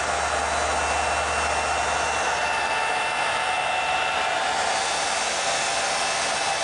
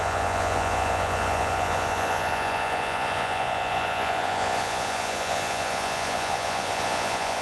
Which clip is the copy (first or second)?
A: second